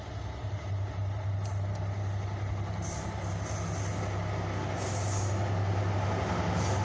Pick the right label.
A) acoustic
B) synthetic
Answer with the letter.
A